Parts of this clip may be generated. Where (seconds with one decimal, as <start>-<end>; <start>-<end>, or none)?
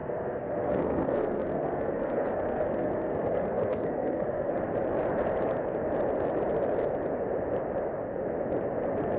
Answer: 0.0-4.5